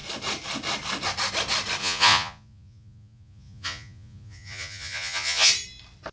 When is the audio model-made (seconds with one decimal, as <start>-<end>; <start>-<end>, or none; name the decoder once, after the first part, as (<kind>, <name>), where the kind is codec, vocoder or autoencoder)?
1.8-5.5 (vocoder, Vocos)